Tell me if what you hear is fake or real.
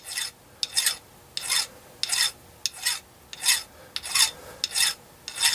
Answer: real